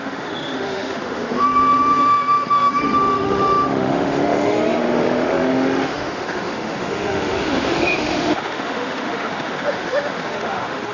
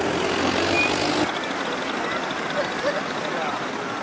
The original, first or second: second